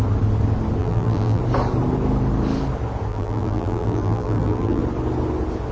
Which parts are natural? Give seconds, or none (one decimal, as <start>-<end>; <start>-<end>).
0.0-0.8; 1.4-3.1; 4.8-5.7